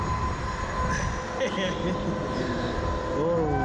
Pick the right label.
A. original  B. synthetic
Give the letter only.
A